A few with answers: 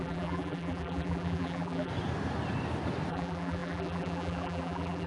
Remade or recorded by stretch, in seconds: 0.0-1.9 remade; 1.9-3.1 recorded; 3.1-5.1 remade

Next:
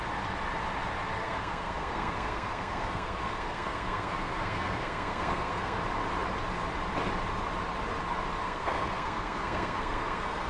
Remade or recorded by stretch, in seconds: 0.0-1.2 recorded; 1.2-5.8 remade; 5.8-8.4 recorded; 8.4-10.5 remade

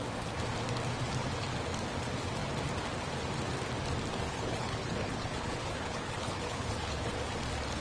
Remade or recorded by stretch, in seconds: 0.0-4.3 recorded; 4.3-7.1 remade; 7.1-7.8 recorded

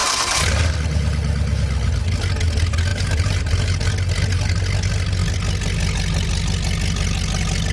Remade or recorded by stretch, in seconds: 0.0-0.7 remade; 0.7-2.9 recorded; 2.9-3.9 remade; 3.9-7.7 recorded

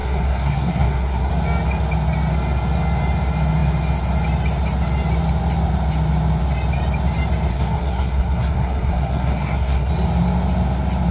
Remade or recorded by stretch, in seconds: 0.0-1.3 remade; 1.3-7.5 recorded; 7.5-9.9 remade; 9.9-11.1 recorded

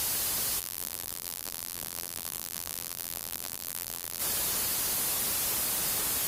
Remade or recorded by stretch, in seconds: 0.0-0.6 recorded; 0.6-4.2 remade; 4.2-6.3 recorded